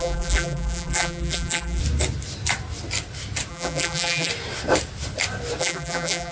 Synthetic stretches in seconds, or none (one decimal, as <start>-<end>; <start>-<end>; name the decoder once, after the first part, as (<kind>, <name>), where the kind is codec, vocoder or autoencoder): 0.0-1.8 (vocoder, BigVGAN v2); 3.5-4.3; 5.6-6.3